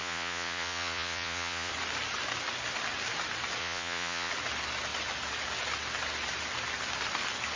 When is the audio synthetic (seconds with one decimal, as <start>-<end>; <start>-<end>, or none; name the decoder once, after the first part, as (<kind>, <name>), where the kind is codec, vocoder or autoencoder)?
0.0-1.7 (vocoder, Vocos); 3.6-4.3